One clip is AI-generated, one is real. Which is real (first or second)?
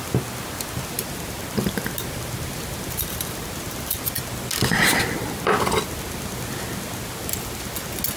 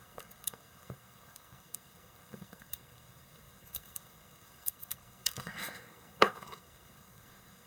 first